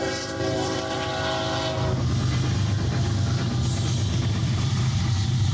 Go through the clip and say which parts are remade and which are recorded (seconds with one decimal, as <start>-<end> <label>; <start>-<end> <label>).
0.0-1.1 remade; 1.1-4.4 recorded; 4.4-5.5 remade